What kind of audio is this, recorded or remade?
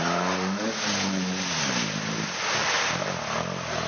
recorded